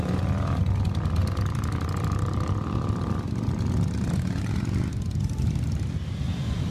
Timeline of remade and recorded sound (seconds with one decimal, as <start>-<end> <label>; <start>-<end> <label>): 0.0-6.7 recorded